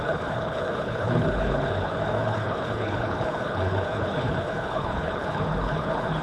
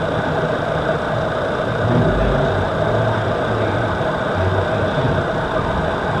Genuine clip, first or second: second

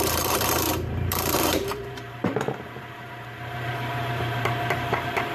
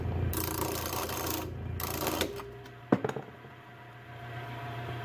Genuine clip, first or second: second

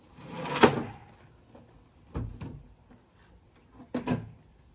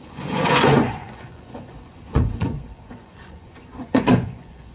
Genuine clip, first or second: first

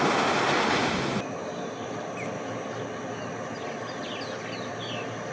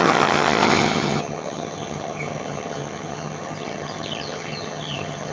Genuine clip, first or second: first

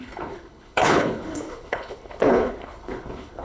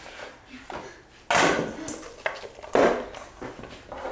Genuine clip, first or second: second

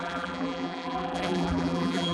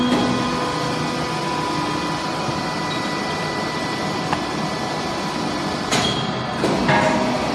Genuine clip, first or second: second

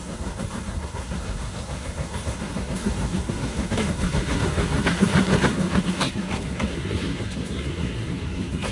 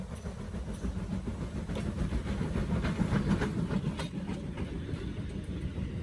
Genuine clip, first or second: second